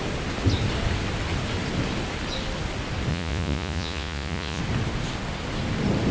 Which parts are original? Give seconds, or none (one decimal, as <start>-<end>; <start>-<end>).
0.0-3.1; 4.6-6.1